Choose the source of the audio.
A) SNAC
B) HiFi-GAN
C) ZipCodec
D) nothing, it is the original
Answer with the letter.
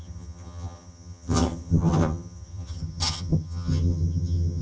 B